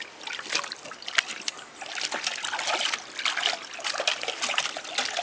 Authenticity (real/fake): real